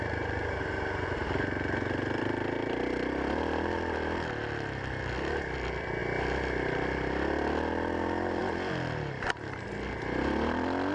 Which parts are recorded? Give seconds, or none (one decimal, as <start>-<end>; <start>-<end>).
0.0-10.9